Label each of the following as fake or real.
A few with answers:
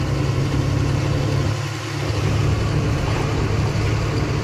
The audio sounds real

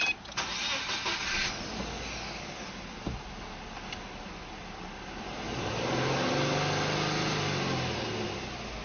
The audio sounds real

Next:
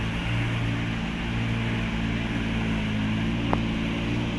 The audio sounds real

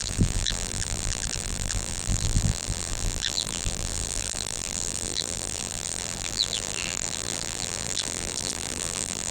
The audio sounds fake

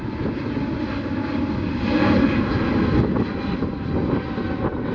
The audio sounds real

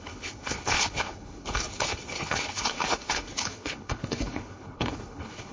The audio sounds fake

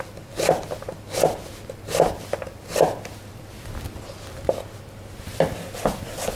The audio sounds real